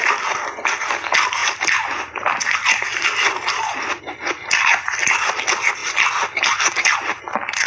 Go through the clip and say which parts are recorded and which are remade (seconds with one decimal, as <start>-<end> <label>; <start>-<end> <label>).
0.0-7.7 recorded